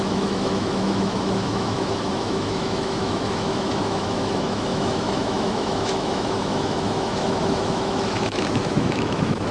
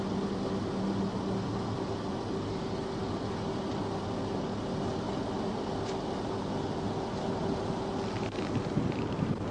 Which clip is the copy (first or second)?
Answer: first